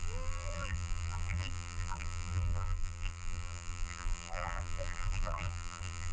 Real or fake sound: fake